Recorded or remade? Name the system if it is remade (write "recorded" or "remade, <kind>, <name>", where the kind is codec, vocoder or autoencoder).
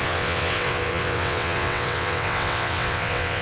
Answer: remade, vocoder, WaveNeXt